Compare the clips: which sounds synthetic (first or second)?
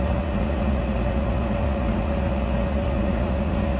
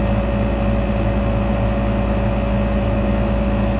first